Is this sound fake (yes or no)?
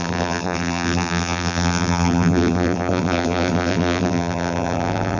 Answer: yes